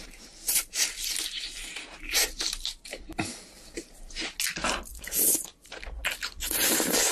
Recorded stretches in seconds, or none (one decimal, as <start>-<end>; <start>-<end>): 4.2-4.9; 6.0-6.6